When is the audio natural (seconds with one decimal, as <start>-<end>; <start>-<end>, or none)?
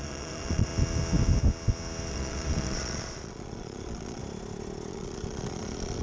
0.7-2.1; 4.2-4.9